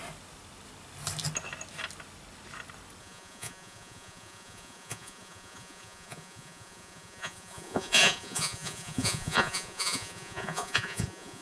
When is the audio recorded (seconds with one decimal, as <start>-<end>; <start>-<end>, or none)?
0.0-3.0